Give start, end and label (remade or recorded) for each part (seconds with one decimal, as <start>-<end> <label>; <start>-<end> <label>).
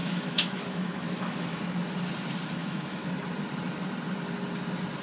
0.0-1.6 remade; 1.6-2.6 recorded; 2.6-3.1 remade; 3.1-5.0 recorded